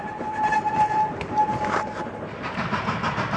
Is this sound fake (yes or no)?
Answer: yes